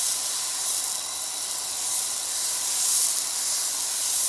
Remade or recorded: recorded